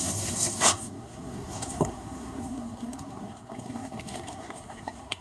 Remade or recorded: remade